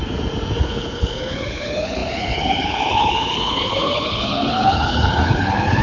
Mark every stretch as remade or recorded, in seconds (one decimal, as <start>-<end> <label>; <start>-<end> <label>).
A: 0.0-0.6 recorded; 0.6-5.8 remade